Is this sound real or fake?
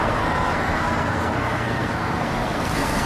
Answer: fake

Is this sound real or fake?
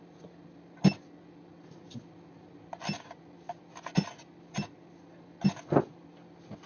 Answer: real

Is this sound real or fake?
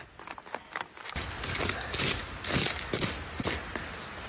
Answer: real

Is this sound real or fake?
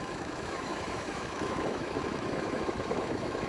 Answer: fake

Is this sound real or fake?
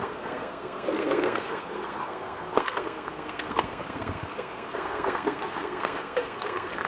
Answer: fake